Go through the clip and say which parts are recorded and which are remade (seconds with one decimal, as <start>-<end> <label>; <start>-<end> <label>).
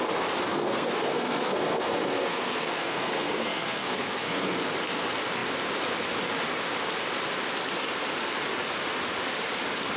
0.0-0.5 recorded; 0.5-4.7 remade; 4.7-10.0 recorded